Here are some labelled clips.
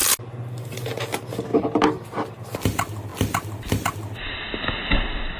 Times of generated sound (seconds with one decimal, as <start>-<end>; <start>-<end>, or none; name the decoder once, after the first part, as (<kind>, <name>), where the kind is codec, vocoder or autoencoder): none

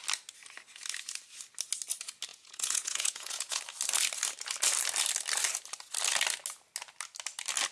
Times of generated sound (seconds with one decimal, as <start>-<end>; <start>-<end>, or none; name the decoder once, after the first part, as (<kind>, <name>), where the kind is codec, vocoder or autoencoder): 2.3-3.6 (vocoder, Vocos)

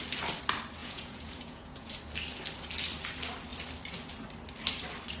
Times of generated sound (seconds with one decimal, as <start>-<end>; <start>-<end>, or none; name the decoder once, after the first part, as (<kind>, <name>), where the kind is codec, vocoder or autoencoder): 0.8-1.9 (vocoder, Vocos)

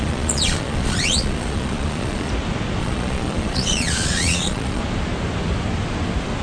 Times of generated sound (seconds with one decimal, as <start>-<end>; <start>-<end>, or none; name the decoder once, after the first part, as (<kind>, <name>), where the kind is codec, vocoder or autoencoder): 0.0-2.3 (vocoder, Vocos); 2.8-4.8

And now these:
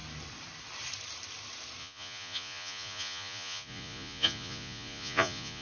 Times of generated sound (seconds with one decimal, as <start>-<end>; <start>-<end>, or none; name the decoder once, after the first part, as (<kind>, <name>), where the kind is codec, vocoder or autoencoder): 1.8-5.6 (vocoder, Vocos)

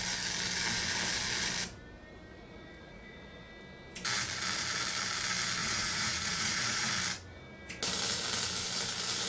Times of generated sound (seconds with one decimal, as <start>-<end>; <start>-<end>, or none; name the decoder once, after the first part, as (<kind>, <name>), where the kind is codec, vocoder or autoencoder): 2.3-3.5 (vocoder, Vocos); 5.6-6.9

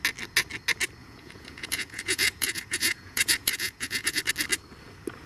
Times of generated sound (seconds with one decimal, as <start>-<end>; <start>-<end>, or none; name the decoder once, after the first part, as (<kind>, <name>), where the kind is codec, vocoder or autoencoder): 1.0-4.2 (vocoder, Vocos)